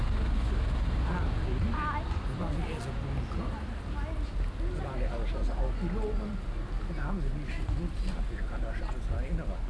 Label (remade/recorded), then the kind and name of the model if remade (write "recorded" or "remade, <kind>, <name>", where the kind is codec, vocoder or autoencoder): recorded